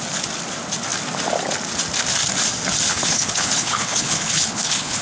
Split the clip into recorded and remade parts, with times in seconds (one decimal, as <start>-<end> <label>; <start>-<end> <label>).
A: 0.0-2.9 recorded; 2.9-5.0 remade